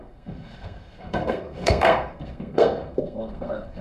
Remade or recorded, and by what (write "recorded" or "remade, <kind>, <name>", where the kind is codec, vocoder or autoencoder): remade, codec, SNAC